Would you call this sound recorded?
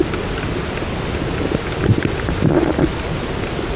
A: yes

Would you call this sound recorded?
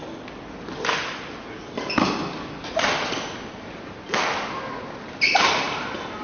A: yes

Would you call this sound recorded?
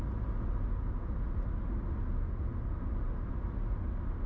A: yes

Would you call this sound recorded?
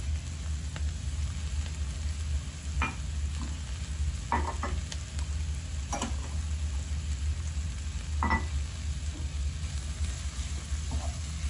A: yes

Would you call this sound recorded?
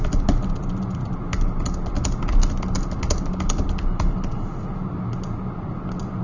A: yes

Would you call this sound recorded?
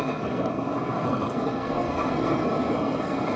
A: no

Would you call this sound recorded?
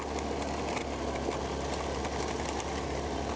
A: yes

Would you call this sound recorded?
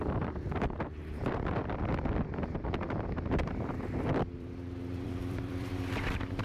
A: no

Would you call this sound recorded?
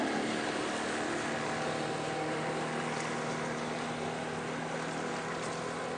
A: yes